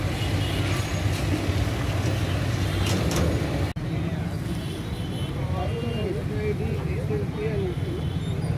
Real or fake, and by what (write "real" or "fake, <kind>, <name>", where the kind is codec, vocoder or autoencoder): real